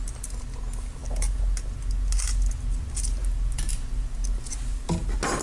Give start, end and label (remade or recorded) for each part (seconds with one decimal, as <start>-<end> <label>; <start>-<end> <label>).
0.0-5.4 recorded